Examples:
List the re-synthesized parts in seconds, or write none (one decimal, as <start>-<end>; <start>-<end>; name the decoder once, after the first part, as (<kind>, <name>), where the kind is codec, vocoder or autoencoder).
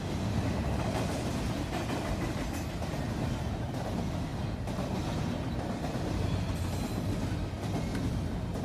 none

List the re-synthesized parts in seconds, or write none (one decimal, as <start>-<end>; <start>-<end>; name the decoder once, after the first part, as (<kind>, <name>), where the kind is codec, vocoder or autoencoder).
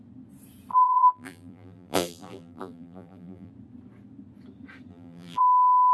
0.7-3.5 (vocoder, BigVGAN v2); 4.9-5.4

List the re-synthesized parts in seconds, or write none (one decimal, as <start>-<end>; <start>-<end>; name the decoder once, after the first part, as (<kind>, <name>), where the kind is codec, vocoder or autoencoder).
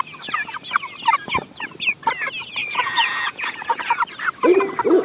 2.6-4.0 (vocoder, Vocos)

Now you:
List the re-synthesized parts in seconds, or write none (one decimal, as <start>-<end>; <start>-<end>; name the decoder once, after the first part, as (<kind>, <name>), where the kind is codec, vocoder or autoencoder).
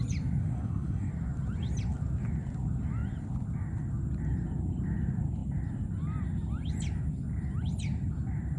0.4-1.1 (codec, SNAC)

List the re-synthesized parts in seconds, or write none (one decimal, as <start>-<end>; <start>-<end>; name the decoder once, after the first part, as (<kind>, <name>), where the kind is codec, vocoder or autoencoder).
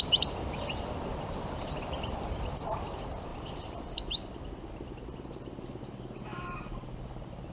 none